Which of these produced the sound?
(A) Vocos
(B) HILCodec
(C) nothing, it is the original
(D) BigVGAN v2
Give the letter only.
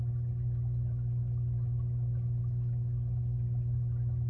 C